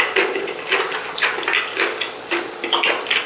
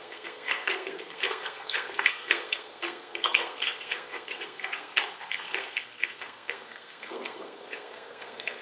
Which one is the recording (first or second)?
first